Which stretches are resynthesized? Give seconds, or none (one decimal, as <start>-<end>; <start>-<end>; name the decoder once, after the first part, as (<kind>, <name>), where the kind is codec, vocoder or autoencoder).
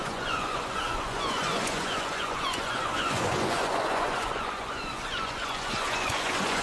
0.0-6.6 (vocoder, Vocos)